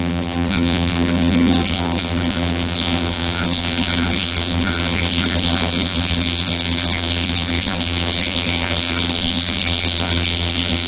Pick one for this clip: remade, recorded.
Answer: remade